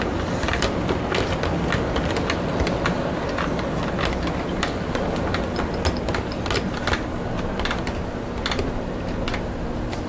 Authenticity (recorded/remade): recorded